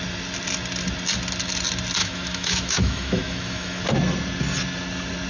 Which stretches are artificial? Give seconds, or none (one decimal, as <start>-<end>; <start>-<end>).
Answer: 2.0-3.8